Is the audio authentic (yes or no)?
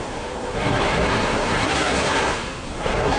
no